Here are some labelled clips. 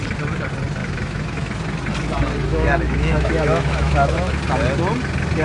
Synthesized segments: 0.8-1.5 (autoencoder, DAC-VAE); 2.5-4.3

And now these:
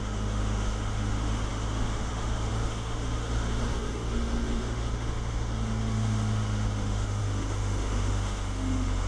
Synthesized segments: 0.0-9.1 (autoencoder, DAC-VAE)